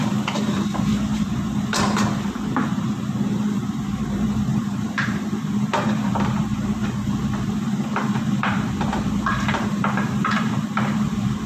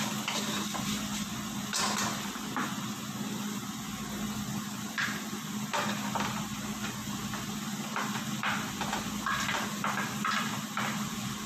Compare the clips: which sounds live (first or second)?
second